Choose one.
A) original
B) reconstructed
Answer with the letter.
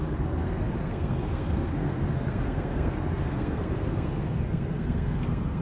B